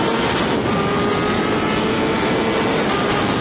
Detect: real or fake real